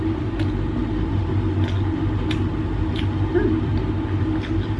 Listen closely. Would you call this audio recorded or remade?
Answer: recorded